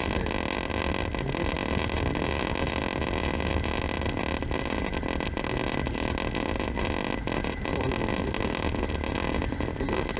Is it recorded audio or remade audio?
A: recorded